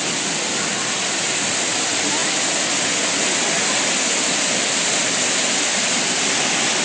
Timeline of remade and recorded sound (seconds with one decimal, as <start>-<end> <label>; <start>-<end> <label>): 0.0-6.8 recorded